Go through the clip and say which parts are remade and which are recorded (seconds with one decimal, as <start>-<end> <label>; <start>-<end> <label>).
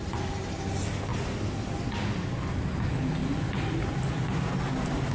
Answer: 0.0-5.1 recorded